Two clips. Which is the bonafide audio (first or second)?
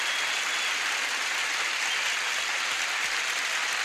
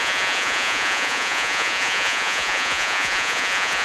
first